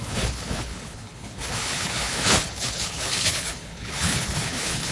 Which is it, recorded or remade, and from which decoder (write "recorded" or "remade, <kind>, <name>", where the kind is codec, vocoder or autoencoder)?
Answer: remade, codec, HILCodec